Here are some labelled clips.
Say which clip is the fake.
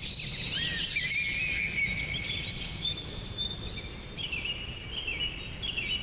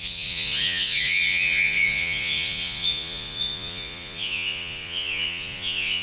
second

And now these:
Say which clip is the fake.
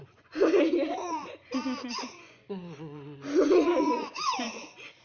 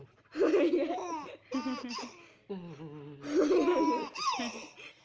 first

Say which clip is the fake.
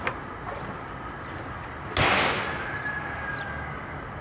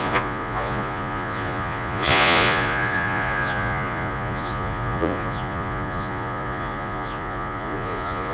second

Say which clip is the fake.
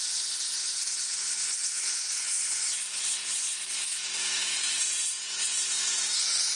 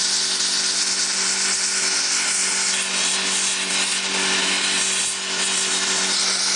first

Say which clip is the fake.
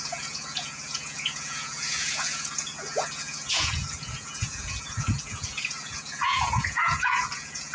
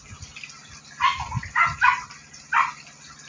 first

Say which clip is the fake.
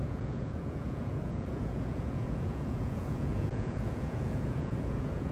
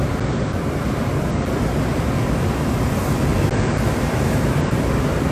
first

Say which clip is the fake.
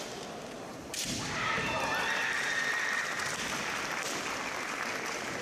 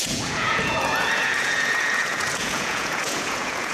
second